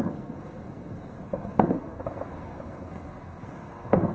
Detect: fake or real fake